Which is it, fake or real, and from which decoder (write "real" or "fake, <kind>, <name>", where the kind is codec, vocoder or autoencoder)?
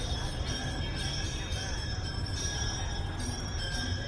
real